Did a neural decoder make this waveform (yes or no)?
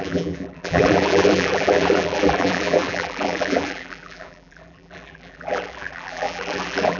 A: yes